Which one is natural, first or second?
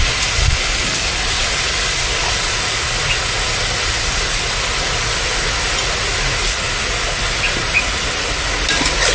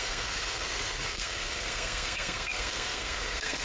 first